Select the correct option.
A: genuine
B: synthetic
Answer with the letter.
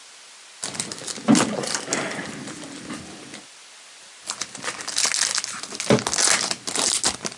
A